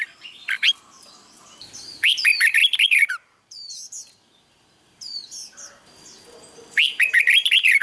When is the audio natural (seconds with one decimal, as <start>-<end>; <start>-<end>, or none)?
5.8-7.8